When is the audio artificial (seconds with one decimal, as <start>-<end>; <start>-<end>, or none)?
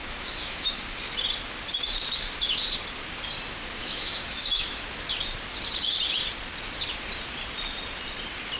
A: 0.0-0.8; 3.8-5.0